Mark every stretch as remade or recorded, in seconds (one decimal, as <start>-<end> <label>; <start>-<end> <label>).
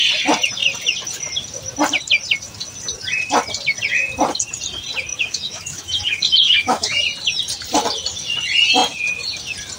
0.0-5.1 recorded; 5.1-7.0 remade; 7.0-9.8 recorded